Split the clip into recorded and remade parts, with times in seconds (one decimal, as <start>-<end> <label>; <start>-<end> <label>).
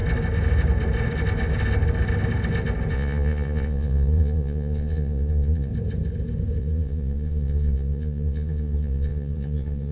0.0-2.9 recorded; 2.9-5.7 remade; 5.7-6.6 recorded; 6.6-9.9 remade